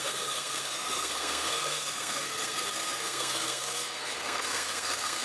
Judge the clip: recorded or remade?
remade